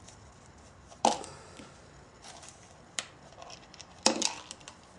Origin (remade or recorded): remade